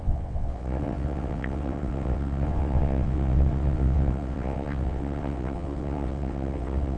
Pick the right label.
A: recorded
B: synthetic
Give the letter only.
B